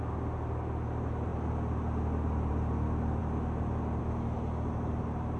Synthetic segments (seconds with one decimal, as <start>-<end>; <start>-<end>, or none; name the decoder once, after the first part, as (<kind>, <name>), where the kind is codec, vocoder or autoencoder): none